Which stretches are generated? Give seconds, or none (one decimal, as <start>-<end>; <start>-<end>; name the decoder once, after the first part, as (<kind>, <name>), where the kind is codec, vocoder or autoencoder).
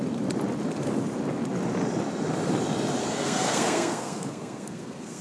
3.0-5.2 (codec, SNAC)